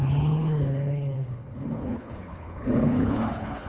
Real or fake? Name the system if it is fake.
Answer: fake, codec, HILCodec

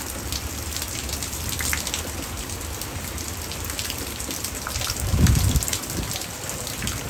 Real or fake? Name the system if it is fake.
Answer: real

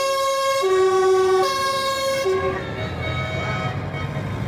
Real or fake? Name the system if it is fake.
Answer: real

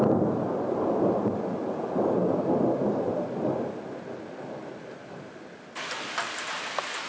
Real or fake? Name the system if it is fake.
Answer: real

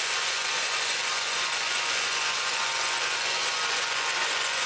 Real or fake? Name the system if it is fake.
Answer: fake, vocoder, Vocos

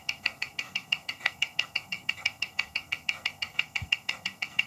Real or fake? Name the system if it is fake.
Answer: fake, codec, SNAC